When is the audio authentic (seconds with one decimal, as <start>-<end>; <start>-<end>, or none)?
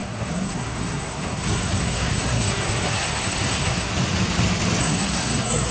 3.9-4.8